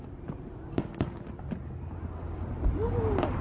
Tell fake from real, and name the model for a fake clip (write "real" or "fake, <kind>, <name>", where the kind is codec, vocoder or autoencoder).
real